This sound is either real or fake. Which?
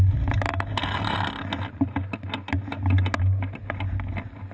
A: real